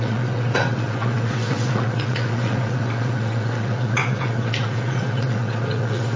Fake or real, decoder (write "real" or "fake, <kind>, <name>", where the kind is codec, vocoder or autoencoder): fake, vocoder, WaveNeXt